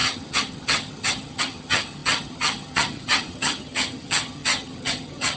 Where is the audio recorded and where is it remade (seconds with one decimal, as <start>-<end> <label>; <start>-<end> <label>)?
0.0-5.4 remade